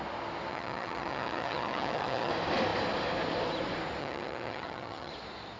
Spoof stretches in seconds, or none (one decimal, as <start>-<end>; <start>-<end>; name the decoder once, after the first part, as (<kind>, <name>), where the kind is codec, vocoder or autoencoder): 0.5-2.3 (vocoder, HiFi-GAN); 4.0-5.1